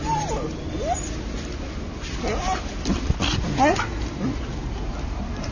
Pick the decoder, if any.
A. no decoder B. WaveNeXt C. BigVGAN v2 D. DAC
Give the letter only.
A